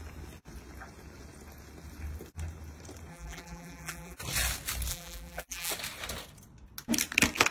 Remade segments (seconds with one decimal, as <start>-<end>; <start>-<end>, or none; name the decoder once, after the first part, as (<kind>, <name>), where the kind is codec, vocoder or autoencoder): 3.1-4.2 (vocoder, BigVGAN v2); 4.9-5.7